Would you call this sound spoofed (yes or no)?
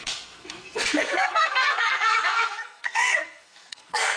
yes